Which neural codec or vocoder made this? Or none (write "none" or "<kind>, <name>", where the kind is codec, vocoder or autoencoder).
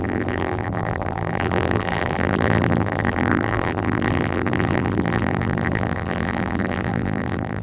vocoder, BigVGAN v2